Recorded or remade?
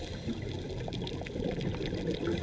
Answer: recorded